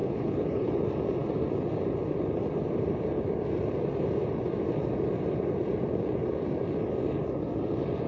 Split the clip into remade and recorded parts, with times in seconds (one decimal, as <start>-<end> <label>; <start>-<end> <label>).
0.0-0.7 remade; 0.7-8.1 recorded